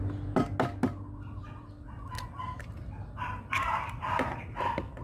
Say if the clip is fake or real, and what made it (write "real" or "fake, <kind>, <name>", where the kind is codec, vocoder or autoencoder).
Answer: real